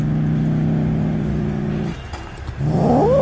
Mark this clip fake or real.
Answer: real